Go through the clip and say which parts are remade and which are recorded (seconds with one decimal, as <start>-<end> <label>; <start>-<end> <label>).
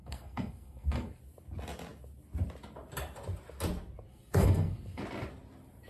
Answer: 0.0-1.2 remade; 1.2-4.1 recorded; 4.1-5.0 remade; 5.0-5.9 recorded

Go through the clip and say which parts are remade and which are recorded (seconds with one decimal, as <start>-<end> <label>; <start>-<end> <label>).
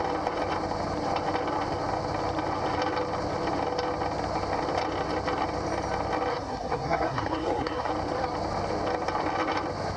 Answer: 0.0-6.3 recorded; 6.3-7.9 remade; 7.9-10.0 recorded